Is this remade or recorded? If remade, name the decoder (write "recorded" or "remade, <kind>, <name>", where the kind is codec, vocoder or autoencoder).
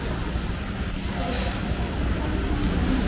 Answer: recorded